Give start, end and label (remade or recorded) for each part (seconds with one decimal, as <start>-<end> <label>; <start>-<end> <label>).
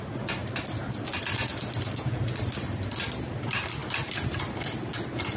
0.0-5.4 recorded